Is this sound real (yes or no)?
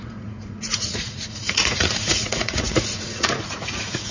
no